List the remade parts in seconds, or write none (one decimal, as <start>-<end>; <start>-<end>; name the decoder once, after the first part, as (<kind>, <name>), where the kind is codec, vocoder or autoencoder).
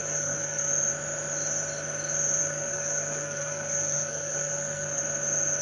0.0-0.7 (codec, SNAC); 2.4-5.0